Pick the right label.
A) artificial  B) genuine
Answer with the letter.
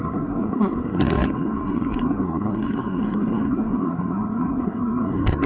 A